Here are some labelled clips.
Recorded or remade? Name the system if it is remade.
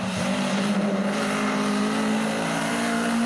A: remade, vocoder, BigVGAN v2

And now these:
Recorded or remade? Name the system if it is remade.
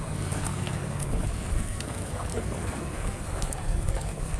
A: remade, codec, SNAC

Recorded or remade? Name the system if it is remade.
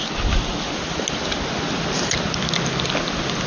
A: recorded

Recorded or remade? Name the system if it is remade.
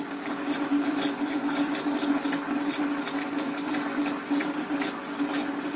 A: recorded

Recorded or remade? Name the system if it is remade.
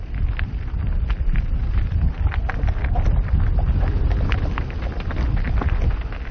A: recorded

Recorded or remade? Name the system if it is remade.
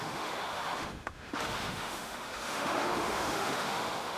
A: remade, autoencoder, DAC-VAE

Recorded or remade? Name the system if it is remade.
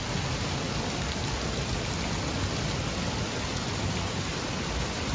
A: recorded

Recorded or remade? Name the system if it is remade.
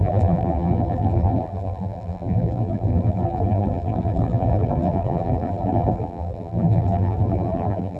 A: remade, vocoder, BigVGAN v2